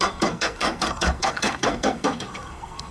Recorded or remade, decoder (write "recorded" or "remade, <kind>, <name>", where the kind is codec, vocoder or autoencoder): remade, codec, SNAC